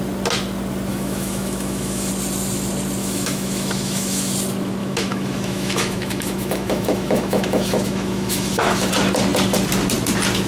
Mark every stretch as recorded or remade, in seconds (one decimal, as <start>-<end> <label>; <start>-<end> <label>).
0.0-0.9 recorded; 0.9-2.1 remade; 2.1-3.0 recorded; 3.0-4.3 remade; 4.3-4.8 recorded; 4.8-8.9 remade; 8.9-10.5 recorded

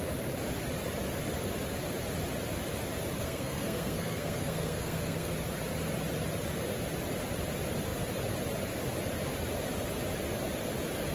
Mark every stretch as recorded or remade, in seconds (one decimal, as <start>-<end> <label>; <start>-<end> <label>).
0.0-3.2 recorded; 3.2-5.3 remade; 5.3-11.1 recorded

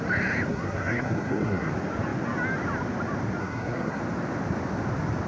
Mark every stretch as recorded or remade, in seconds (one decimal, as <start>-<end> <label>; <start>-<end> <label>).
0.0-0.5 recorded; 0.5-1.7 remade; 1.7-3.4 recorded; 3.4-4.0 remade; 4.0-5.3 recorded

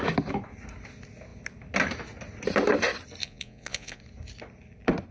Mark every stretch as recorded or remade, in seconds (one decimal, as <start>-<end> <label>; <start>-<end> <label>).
0.0-3.2 recorded; 3.2-4.0 remade; 4.0-5.1 recorded